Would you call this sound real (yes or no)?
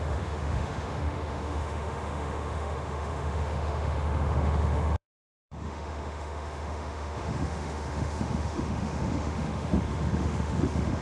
no